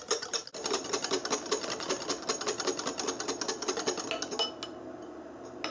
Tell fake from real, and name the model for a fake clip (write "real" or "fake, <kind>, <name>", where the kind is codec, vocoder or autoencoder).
real